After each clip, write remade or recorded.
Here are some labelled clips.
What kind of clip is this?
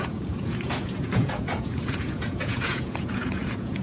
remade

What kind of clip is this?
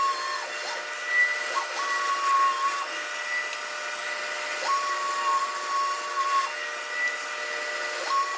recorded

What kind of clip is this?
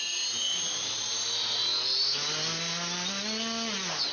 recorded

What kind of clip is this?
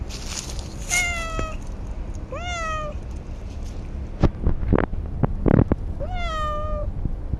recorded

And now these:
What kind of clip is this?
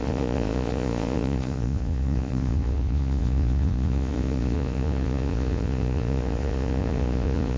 remade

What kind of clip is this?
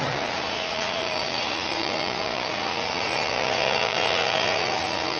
remade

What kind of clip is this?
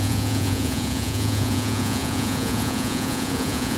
remade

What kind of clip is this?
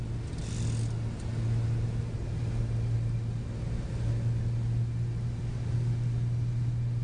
recorded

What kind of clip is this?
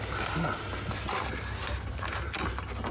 recorded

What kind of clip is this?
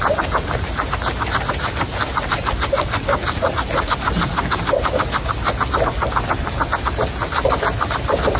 recorded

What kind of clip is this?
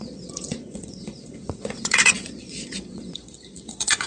remade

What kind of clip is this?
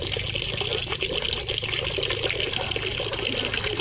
recorded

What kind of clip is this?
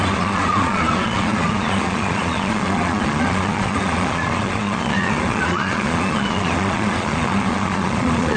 remade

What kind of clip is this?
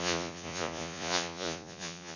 remade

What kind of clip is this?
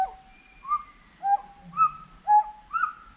recorded